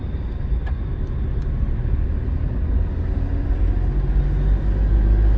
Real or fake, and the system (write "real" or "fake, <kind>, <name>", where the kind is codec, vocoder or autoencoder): real